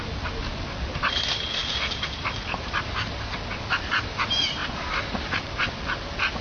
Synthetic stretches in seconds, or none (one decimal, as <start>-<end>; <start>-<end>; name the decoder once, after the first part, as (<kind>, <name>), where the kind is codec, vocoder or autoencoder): none